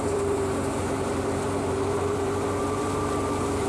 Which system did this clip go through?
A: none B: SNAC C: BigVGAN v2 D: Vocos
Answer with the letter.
C